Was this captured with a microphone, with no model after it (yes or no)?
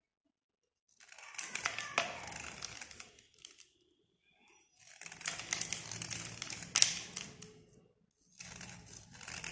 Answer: yes